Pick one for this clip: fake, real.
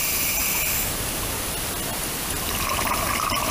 real